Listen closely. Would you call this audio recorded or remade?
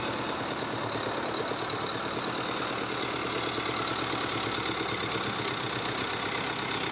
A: recorded